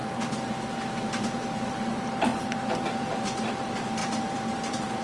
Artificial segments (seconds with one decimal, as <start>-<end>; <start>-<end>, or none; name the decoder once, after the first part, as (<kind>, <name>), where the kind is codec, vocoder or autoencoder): 1.9-5.0 (vocoder, BigVGAN v2)